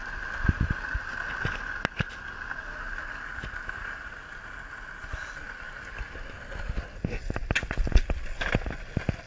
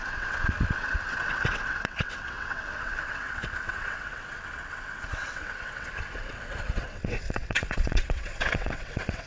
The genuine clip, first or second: first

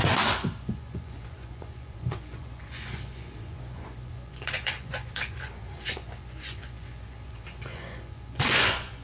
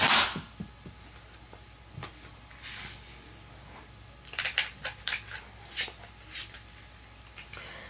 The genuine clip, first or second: second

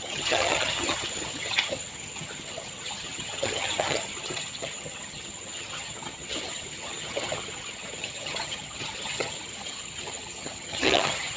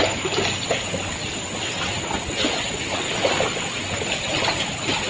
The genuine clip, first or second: second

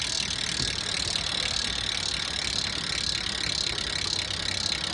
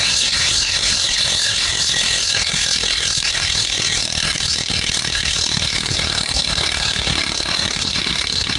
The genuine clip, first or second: first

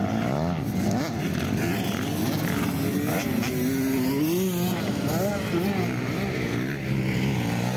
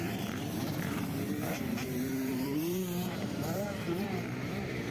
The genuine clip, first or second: first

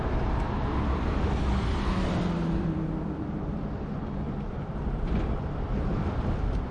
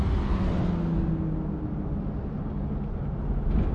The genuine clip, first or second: second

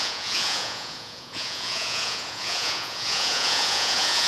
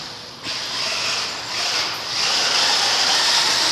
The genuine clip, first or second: second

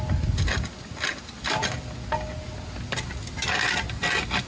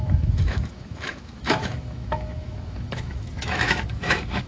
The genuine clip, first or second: first